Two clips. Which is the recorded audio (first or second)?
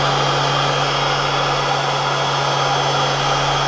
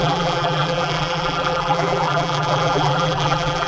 first